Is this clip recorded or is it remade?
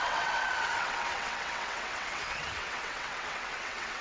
remade